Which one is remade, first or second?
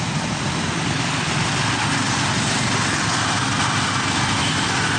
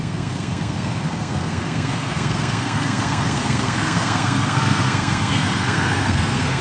second